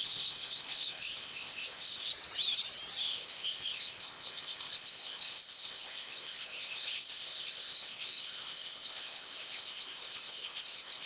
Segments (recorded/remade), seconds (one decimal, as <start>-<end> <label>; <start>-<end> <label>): 0.0-2.1 remade; 2.1-3.0 recorded; 3.0-11.1 remade